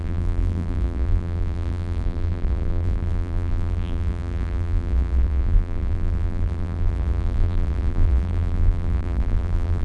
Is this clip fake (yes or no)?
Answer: yes